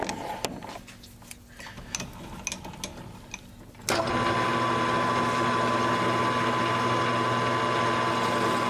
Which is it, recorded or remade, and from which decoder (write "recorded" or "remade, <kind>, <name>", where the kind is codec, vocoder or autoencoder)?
recorded